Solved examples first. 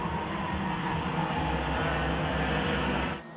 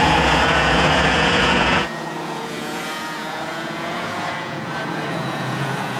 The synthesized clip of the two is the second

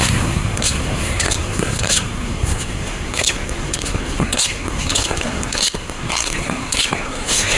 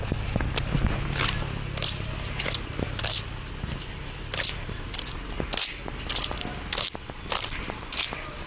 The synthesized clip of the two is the first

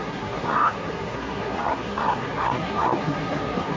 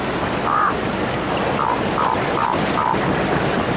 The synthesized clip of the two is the first